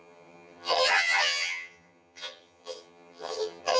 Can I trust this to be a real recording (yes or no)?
no